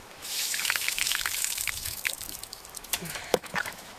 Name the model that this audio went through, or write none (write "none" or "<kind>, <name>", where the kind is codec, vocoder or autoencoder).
autoencoder, DAC-VAE